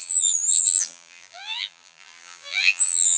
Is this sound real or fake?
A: fake